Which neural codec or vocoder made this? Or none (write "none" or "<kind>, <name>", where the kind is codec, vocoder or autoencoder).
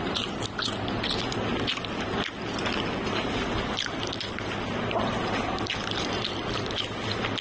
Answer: none